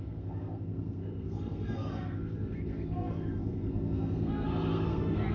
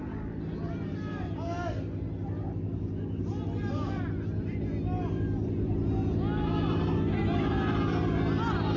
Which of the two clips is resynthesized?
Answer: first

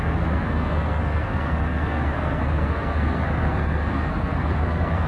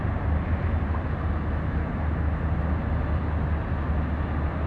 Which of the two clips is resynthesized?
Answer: first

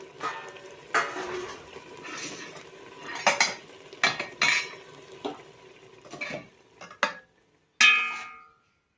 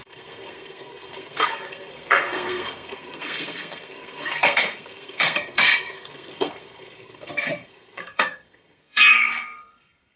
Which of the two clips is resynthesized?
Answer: second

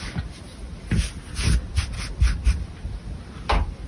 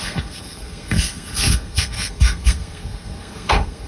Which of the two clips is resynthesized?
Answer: second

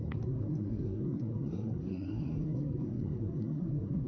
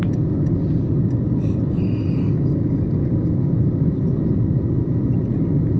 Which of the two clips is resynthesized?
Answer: first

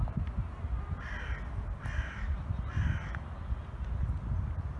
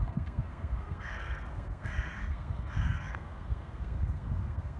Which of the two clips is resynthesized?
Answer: second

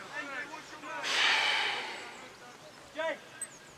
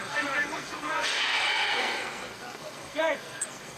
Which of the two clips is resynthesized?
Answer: second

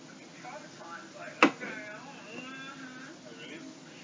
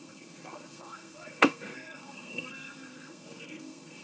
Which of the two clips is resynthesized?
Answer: second